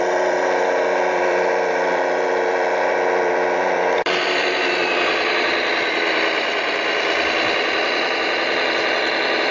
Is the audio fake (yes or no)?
yes